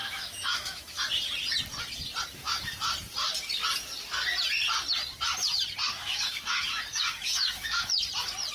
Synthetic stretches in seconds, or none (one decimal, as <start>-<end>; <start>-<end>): 0.0-1.0; 6.0-7.9